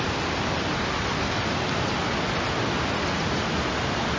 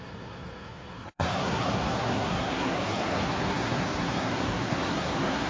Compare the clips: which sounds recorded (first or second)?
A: first